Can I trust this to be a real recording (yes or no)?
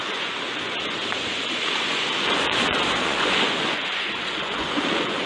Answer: no